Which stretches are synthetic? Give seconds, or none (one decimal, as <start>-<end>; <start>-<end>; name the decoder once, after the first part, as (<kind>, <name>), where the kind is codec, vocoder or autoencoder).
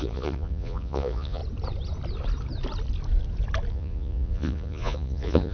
0.0-1.4 (vocoder, Vocos); 3.7-5.5